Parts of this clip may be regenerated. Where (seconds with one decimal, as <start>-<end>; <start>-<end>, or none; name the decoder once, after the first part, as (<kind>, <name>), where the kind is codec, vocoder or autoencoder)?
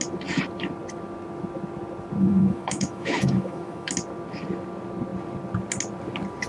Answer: 2.2-3.9 (autoencoder, DAC-VAE)